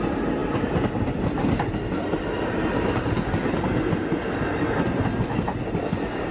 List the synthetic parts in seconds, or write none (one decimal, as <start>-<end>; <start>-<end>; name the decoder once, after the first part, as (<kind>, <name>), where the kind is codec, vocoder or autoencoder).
none